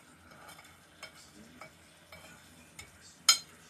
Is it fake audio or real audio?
real